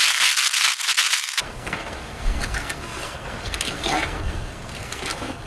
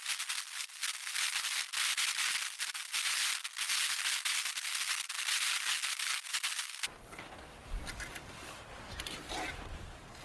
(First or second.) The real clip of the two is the second